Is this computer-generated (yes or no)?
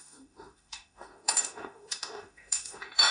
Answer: yes